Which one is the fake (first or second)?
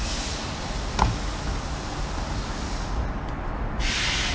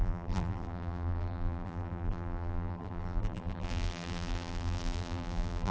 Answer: second